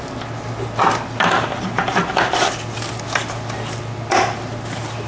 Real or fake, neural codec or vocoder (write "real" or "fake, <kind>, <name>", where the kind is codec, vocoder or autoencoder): real